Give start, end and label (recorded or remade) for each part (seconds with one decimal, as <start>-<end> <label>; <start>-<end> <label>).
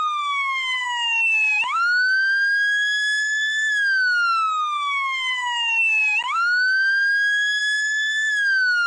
0.0-8.9 remade